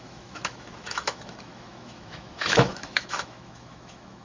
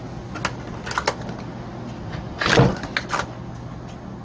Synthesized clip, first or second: first